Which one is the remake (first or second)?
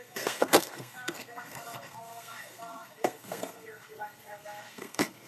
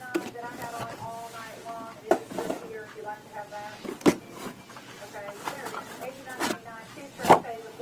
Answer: first